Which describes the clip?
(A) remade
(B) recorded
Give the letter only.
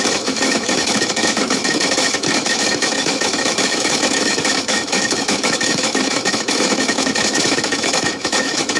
A